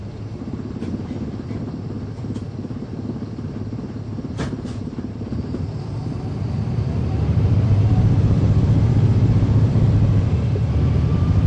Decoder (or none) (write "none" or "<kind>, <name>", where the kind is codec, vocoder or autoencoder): vocoder, BigVGAN v2